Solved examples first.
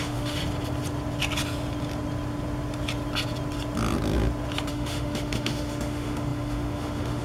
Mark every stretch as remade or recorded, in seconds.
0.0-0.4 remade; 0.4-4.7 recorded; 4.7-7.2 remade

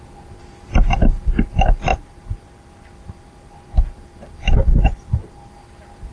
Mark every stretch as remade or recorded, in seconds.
0.0-0.4 recorded; 0.4-1.1 remade; 1.1-1.9 recorded; 1.9-5.5 remade; 5.5-6.1 recorded